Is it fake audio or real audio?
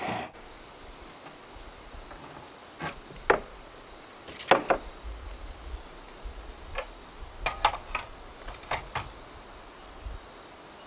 real